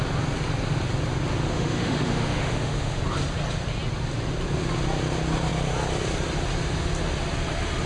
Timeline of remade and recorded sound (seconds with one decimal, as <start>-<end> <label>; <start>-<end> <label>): 0.0-1.5 recorded; 1.5-3.0 remade; 3.0-7.9 recorded